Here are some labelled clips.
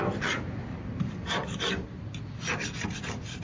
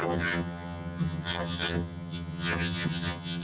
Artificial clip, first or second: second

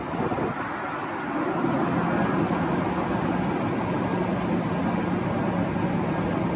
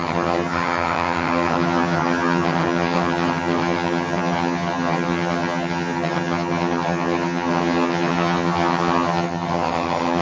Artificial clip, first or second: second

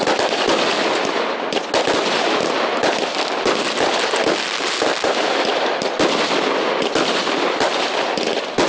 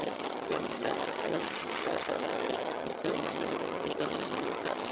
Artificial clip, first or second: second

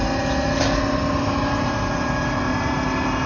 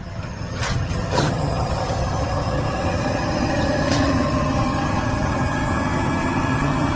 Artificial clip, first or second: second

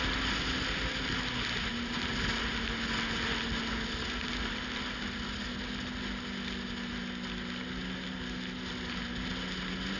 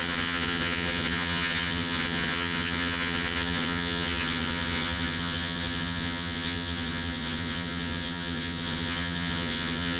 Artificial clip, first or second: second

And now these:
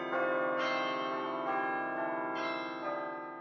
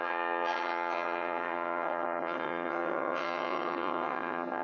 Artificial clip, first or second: second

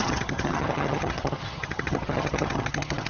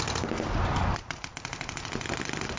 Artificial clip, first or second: first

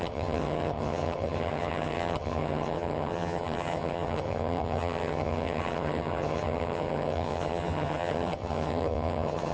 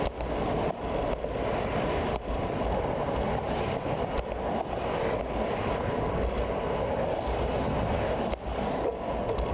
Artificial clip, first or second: first